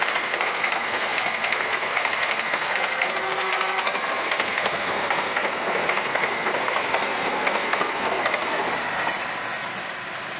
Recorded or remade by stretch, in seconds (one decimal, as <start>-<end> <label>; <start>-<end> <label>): 0.0-8.6 remade; 8.6-10.4 recorded